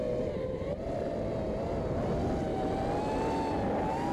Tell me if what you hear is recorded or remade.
recorded